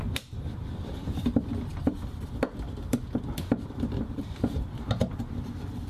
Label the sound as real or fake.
fake